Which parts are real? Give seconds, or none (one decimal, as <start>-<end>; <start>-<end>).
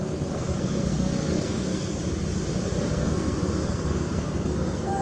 2.0-2.9